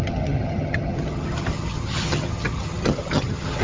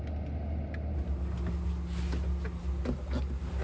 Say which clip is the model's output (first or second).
first